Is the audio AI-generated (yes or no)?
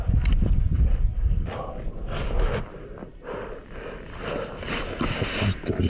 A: no